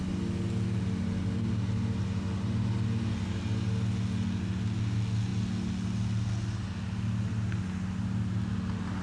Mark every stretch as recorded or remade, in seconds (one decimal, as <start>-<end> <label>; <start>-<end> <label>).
0.0-9.0 recorded